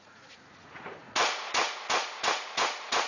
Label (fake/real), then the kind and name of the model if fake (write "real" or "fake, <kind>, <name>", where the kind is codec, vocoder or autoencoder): fake, vocoder, Vocos